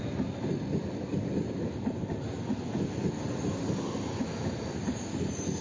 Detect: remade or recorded recorded